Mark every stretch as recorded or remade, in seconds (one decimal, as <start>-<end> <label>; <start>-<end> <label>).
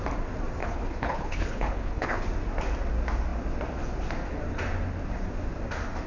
0.0-0.6 recorded; 0.6-2.2 remade; 2.2-6.1 recorded